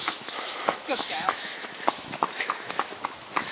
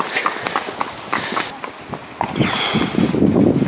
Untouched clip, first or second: second